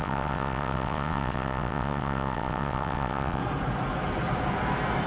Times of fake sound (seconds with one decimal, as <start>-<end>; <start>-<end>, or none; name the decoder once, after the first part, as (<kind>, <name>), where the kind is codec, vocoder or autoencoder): 0.0-3.4 (vocoder, WaveNeXt)